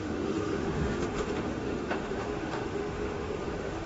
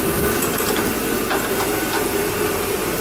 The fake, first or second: first